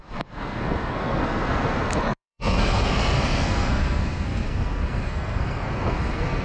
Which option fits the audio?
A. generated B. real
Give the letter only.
A